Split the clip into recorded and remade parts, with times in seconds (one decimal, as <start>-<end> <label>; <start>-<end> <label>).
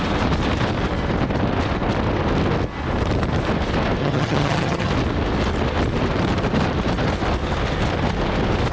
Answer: 0.0-4.0 recorded; 4.0-4.9 remade; 4.9-8.7 recorded